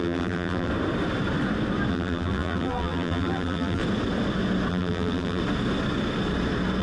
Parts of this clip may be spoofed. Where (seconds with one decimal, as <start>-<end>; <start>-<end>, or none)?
0.0-0.7; 1.9-3.8; 4.7-5.4